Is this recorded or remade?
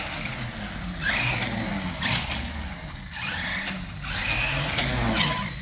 recorded